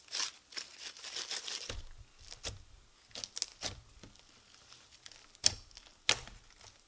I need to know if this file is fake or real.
real